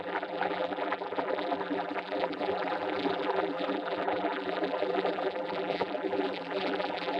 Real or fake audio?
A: fake